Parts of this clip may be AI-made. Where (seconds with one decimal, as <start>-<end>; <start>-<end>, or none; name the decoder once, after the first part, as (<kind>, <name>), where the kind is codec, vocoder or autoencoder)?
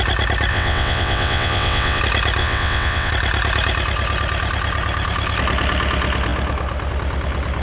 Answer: 0.5-2.0 (vocoder, WaveNeXt); 2.4-3.1